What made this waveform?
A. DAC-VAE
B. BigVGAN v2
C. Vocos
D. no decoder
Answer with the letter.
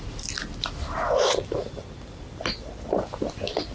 D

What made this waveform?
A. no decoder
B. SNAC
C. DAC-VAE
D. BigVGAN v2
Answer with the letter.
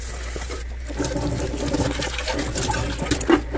A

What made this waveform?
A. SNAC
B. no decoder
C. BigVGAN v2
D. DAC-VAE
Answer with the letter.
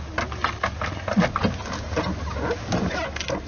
B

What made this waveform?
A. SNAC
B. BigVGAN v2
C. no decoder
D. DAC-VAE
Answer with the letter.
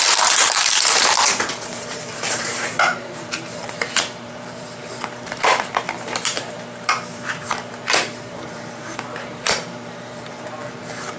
B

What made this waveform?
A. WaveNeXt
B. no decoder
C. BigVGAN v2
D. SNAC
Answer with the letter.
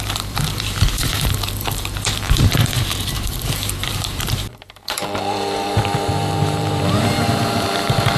C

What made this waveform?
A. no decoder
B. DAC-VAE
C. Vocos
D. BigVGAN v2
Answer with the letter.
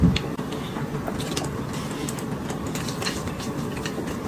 A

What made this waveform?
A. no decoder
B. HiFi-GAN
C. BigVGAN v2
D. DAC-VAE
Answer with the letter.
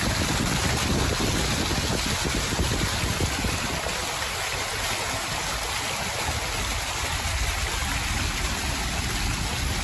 A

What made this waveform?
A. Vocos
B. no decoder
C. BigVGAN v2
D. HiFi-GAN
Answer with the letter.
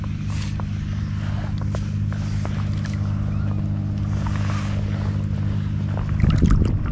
B